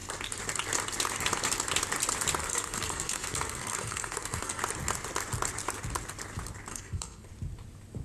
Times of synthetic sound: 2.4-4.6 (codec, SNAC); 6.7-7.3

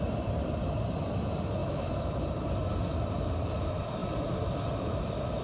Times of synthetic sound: 1.6-2.2 (autoencoder, DAC-VAE)